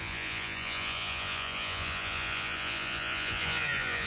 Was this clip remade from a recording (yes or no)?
yes